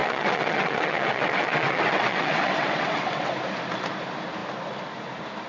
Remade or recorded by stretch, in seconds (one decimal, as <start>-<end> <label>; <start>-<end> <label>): 0.0-3.3 remade; 3.3-5.5 recorded